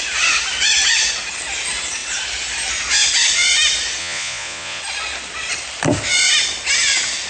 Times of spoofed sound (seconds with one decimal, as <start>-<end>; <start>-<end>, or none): 4.0-4.8